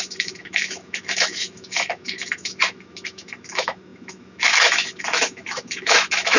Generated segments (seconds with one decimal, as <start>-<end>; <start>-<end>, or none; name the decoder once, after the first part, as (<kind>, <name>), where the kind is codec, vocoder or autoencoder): 0.0-6.4 (autoencoder, DAC-VAE)